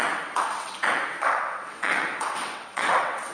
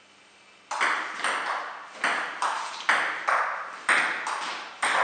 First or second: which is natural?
second